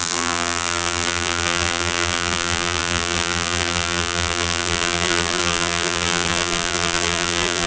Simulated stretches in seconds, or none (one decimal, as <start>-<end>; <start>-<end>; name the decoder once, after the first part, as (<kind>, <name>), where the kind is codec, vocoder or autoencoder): 0.0-7.7 (vocoder, BigVGAN v2)